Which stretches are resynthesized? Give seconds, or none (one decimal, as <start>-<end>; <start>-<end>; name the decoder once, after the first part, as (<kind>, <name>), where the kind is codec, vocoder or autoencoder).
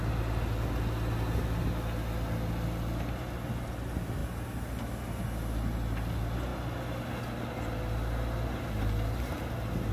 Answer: none